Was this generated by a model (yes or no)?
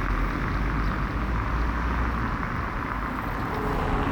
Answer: no